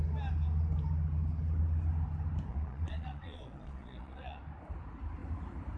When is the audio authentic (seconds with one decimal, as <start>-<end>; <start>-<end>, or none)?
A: 0.0-2.5; 4.4-5.8

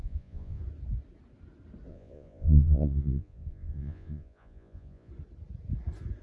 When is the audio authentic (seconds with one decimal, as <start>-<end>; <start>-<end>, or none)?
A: 0.6-1.9; 5.1-6.2

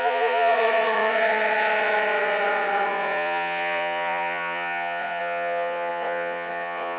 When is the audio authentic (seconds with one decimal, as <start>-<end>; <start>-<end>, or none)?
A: none

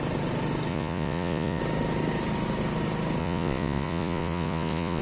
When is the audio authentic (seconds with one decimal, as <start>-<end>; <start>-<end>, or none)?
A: 0.0-0.7; 1.6-3.2

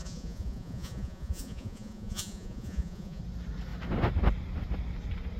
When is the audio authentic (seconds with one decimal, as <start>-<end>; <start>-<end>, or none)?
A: 3.2-5.4

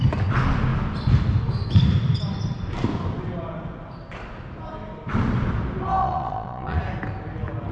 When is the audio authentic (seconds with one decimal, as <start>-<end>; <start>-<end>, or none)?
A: 0.0-6.0; 6.8-7.7

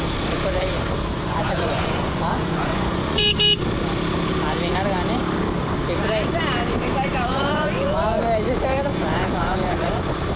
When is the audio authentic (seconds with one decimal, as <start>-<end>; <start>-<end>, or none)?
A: 0.0-1.1; 3.2-7.3; 8.2-8.9; 10.0-10.4

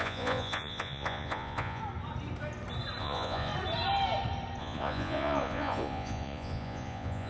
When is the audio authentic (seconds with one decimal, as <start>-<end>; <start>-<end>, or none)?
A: 1.8-3.0; 3.5-4.6